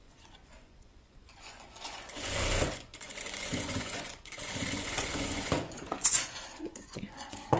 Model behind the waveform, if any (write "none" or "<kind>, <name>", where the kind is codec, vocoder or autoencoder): vocoder, Vocos